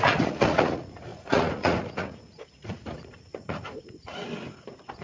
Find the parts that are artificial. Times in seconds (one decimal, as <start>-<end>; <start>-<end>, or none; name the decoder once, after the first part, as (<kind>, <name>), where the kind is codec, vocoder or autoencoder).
0.0-4.2 (vocoder, Vocos)

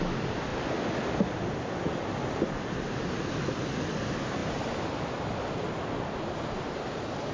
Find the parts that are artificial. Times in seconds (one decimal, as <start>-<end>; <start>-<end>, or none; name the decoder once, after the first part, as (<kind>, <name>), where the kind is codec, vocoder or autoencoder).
none

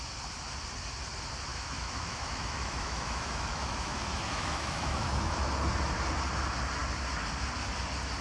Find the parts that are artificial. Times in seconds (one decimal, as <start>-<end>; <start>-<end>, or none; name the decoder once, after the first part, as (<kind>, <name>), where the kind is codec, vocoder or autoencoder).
1.5-5.5 (autoencoder, DAC-VAE)